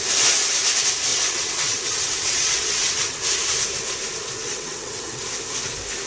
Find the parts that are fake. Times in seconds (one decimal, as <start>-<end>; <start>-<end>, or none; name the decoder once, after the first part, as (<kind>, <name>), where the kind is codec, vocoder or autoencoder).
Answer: 1.1-3.2 (vocoder, WaveNeXt); 4.4-5.2